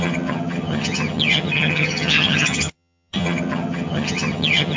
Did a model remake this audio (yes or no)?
yes